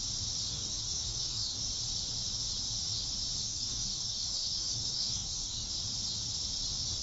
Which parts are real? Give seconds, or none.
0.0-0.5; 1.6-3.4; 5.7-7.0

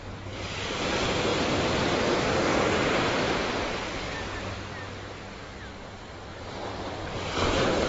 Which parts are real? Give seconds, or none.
0.0-1.3; 2.0-2.5; 3.8-6.3

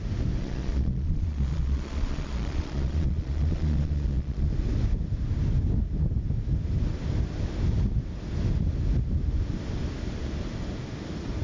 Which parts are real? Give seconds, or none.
0.0-0.4; 4.5-11.4

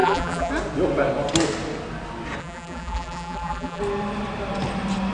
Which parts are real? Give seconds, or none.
0.5-2.4; 3.8-5.1

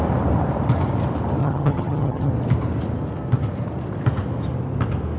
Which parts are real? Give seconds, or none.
0.0-1.4; 2.3-5.2

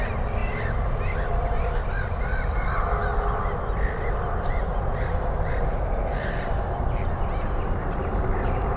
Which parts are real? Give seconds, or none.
0.0-8.8

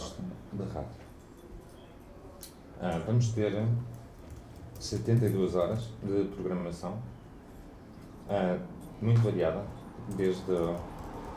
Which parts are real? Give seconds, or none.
0.6-3.0; 5.8-6.6; 8.3-11.4

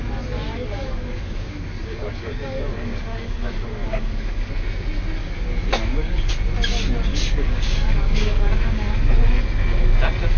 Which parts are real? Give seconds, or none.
0.0-0.5; 4.5-5.2; 6.3-7.1; 8.9-10.4